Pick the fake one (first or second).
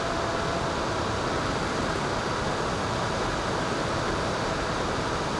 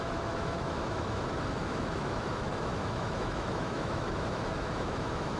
second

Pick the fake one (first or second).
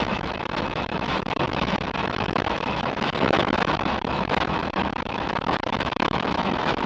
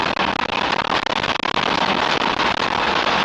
first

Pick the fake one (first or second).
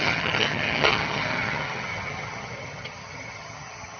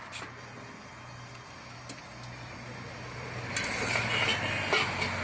first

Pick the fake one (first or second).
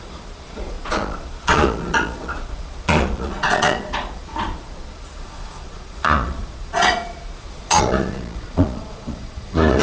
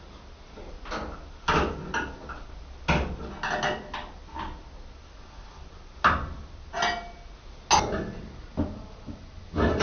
first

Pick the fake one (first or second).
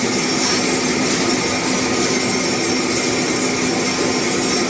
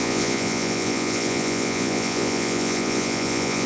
second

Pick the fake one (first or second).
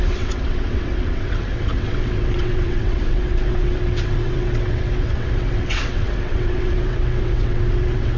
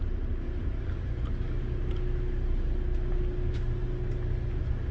first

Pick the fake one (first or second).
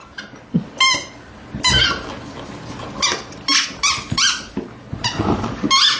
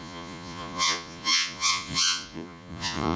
second